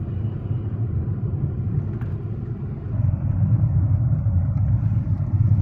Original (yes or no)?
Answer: no